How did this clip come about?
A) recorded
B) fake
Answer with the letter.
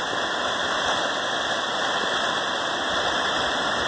A